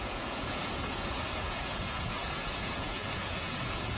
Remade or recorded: remade